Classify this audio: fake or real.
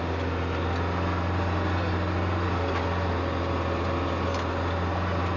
real